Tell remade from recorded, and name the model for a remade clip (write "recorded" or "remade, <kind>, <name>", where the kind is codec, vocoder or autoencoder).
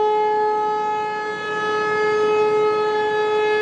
recorded